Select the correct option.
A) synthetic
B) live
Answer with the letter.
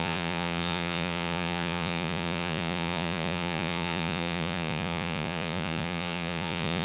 A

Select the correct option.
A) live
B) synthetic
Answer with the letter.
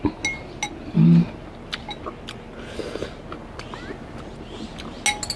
A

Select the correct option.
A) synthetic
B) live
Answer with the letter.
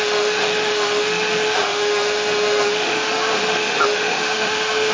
A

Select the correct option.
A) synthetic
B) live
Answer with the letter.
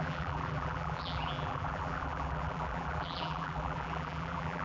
A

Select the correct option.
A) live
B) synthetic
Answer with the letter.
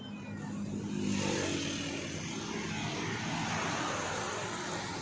A